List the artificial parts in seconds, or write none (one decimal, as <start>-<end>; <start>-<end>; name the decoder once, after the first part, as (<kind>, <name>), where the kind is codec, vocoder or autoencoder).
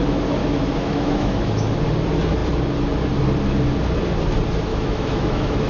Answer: 0.4-1.5 (autoencoder, DAC-VAE); 4.7-5.7